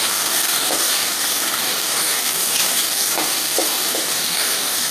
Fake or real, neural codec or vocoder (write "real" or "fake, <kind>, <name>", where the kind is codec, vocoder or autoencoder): fake, codec, DAC